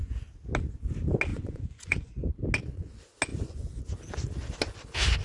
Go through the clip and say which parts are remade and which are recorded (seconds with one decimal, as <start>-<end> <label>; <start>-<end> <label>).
0.0-1.3 recorded; 1.3-2.2 remade; 2.2-3.3 recorded; 3.3-3.8 remade; 3.8-5.2 recorded